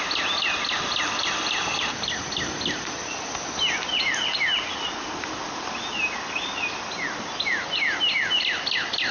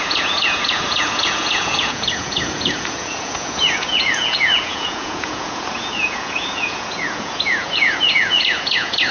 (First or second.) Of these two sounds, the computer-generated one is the second